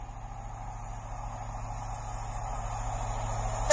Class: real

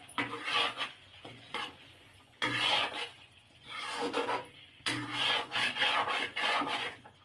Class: fake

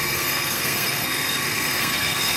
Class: fake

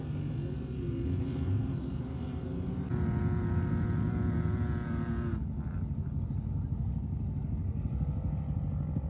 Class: real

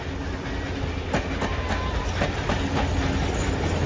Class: real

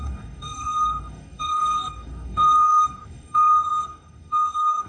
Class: fake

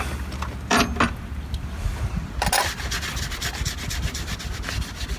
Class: real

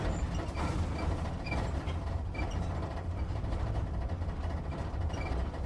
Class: real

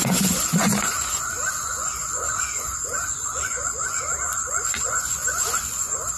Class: fake